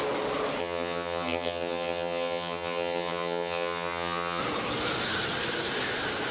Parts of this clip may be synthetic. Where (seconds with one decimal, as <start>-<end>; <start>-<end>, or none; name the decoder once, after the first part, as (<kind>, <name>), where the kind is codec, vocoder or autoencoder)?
0.6-4.4 (vocoder, HiFi-GAN)

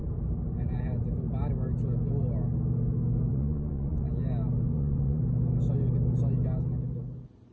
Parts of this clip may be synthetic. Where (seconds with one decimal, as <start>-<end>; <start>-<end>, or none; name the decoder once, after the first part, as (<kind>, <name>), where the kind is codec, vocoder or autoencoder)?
3.3-4.1 (vocoder, Vocos); 4.7-5.2

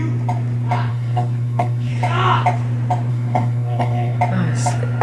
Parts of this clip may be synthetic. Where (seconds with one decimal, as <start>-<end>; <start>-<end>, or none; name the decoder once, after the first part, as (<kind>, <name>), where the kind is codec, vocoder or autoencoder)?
0.9-1.9 (codec, SNAC); 3.1-4.2

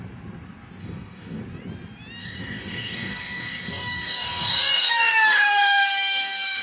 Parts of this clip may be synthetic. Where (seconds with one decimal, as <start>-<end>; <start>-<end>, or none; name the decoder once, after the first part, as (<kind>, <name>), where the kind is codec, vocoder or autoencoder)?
0.8-1.4 (codec, DAC); 2.2-6.6

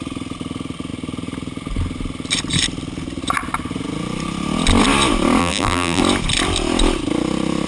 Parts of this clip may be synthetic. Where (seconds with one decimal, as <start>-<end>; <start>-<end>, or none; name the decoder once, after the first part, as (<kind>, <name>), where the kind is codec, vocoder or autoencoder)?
5.4-6.0 (vocoder, BigVGAN v2)

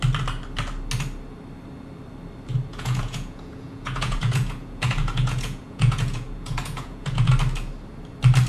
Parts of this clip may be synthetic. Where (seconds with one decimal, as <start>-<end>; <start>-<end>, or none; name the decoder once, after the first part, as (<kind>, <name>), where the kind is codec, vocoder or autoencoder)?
2.7-7.3 (vocoder, Vocos)

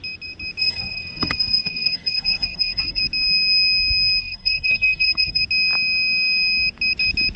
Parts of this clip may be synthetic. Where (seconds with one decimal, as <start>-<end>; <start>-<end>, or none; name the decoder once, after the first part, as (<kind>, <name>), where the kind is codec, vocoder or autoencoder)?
0.6-3.0 (codec, SNAC); 4.2-5.4